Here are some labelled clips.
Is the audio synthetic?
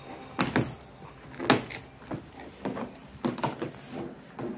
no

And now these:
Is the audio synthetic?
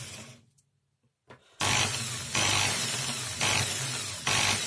no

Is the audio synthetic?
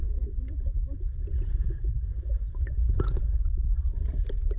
yes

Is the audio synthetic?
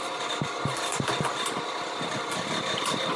no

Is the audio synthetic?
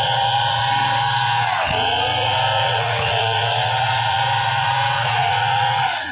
yes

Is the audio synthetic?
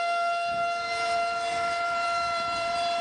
yes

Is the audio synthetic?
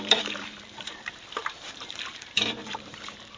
yes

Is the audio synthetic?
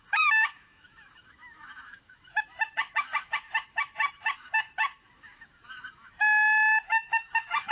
yes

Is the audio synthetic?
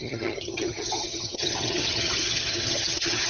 yes